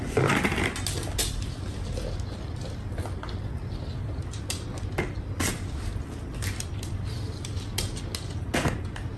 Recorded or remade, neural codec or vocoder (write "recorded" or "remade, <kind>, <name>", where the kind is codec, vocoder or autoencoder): recorded